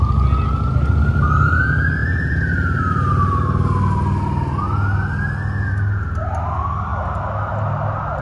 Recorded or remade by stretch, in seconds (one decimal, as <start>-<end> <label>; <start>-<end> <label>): 0.0-8.2 recorded